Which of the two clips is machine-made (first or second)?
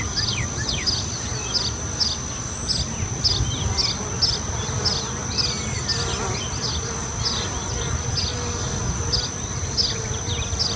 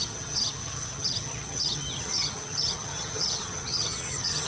second